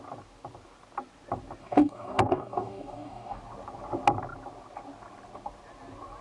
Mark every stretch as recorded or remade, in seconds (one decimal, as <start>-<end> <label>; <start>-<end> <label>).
0.0-1.6 recorded; 1.6-3.4 remade; 3.4-6.2 recorded